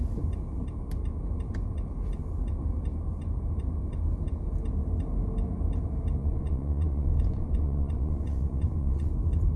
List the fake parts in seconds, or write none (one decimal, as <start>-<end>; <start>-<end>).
6.2-9.1